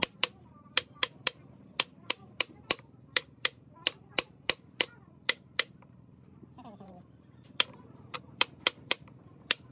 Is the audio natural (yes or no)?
no